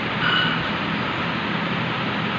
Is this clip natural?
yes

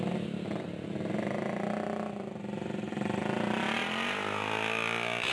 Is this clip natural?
yes